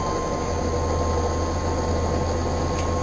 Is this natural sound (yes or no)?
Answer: yes